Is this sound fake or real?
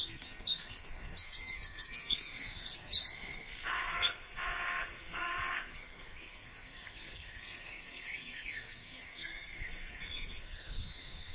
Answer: fake